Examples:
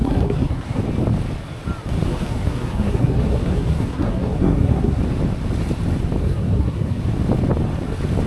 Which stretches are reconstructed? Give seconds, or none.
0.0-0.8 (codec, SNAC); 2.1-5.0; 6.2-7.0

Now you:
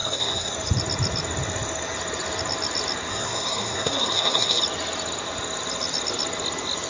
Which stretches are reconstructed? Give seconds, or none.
0.0-0.5 (codec, SNAC); 3.1-4.6

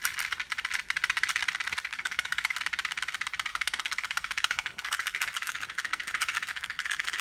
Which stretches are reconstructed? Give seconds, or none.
1.9-2.6 (codec, SNAC); 3.5-7.2

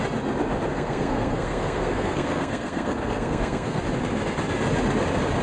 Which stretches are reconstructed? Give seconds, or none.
0.7-3.8 (codec, SNAC)